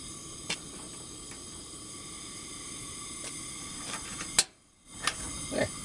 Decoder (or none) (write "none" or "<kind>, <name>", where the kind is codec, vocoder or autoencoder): none